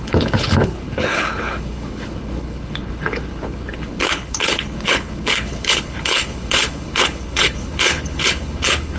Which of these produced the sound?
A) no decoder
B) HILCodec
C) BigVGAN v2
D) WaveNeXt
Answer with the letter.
B